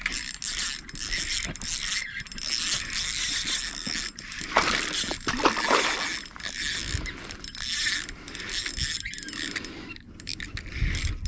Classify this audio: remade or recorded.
recorded